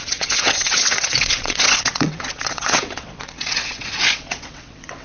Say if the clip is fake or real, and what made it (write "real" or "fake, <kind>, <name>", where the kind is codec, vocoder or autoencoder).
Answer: fake, vocoder, WaveNeXt